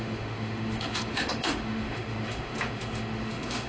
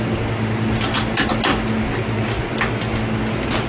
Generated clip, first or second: first